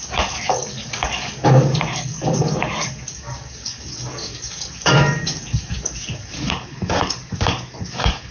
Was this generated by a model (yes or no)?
yes